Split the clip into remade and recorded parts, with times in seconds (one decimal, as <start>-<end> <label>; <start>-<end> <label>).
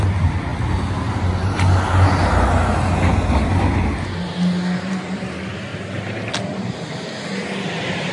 0.0-5.7 recorded; 5.7-6.3 remade; 6.3-8.1 recorded